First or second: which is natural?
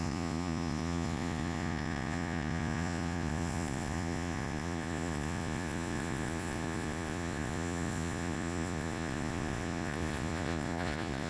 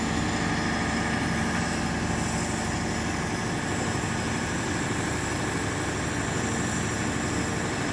second